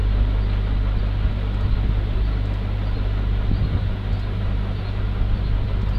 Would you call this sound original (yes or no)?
yes